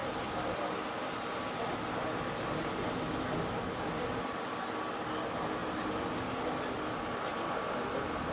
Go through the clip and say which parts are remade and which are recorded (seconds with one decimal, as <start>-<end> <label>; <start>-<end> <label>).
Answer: 0.0-8.3 recorded